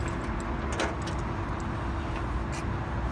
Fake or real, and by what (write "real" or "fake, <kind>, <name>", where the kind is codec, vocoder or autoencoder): real